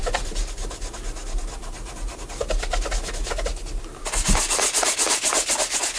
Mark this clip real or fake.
real